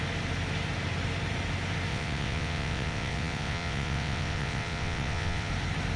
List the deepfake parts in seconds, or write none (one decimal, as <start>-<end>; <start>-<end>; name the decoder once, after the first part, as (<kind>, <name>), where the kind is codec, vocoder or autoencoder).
1.9-5.5 (vocoder, WaveNeXt)